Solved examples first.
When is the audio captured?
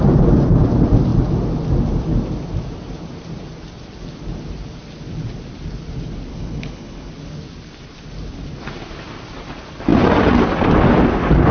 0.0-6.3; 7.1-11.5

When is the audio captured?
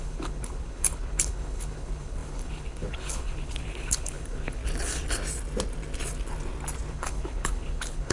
4.6-6.9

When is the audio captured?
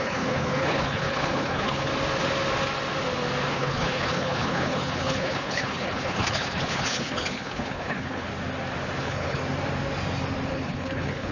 1.9-3.5; 8.3-9.0; 9.4-10.5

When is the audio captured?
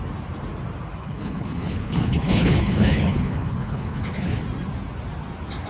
0.0-1.0; 4.4-5.7